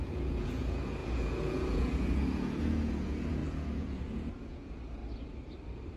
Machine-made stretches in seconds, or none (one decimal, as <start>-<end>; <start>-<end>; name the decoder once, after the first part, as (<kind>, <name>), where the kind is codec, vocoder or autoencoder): 0.0-5.0 (vocoder, Vocos)